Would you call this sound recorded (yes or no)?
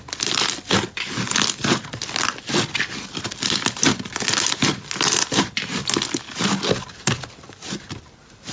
yes